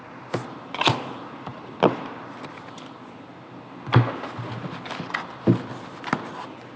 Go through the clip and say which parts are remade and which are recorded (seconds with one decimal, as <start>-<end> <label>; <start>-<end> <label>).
0.0-6.8 recorded